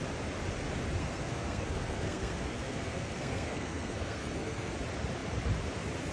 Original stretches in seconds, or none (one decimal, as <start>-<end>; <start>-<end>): 0.0-1.0; 4.7-6.1